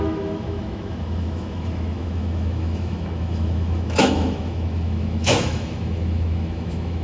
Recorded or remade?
remade